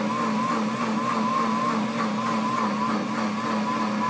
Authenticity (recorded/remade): recorded